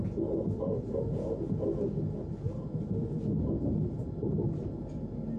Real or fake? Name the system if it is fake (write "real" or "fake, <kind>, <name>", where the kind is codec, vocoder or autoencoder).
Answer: real